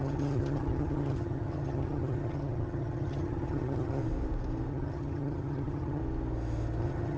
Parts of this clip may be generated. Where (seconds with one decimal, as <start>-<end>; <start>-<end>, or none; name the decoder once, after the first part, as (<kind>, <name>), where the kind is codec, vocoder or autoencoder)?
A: 0.0-4.0 (vocoder, HiFi-GAN); 4.7-6.0; 6.8-7.2